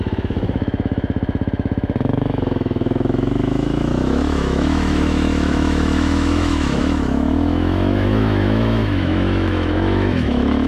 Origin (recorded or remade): remade